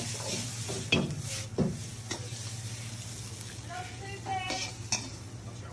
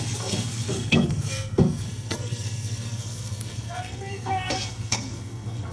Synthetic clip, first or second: second